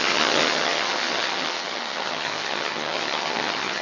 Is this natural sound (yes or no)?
no